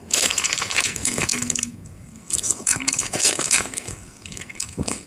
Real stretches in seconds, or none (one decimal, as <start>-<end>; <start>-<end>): none